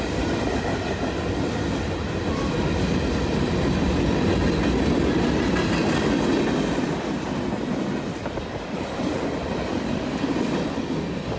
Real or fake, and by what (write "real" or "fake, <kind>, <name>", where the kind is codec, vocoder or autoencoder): real